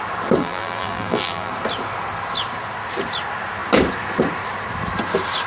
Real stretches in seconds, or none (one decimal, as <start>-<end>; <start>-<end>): 0.0-0.4; 1.5-5.5